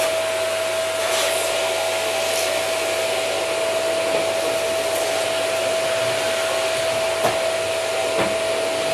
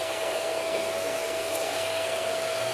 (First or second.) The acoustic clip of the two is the first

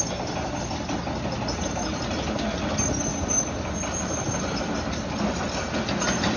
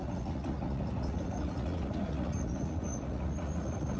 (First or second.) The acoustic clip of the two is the first